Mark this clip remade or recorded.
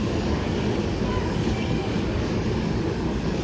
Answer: remade